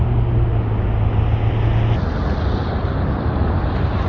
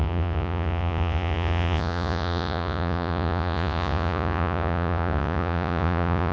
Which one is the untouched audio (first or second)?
first